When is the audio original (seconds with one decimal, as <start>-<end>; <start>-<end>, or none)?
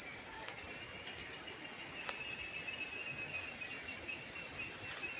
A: 0.0-5.2